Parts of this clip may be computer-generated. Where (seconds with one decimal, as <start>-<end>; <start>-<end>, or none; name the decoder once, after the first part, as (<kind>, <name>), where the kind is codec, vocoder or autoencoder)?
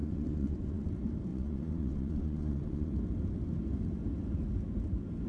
0.0-0.9 (vocoder, Vocos); 1.3-2.9